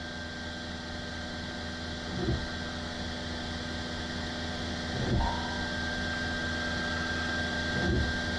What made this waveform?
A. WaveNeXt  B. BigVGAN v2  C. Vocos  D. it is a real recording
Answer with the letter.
D